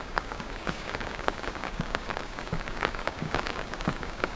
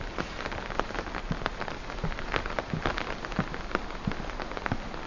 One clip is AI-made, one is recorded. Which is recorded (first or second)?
second